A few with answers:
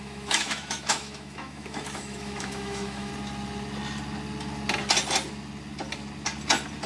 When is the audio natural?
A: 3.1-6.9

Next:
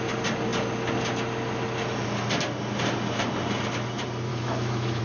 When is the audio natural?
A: 0.0-4.3

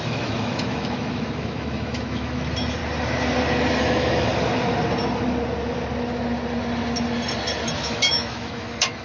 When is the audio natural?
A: 2.8-3.8; 4.3-7.8

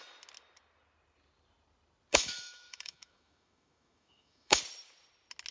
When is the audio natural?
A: 0.0-2.1; 4.6-5.5

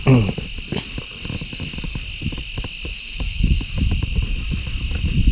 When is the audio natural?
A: 0.0-2.9; 3.7-5.3

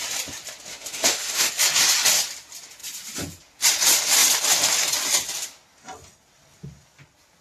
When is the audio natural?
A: 0.0-0.7; 1.5-7.4